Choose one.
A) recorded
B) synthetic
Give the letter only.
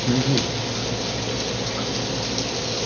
A